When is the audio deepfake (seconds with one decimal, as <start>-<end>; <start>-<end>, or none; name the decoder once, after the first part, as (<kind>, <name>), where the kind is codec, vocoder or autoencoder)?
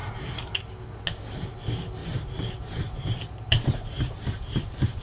0.0-0.6 (vocoder, BigVGAN v2); 2.0-5.0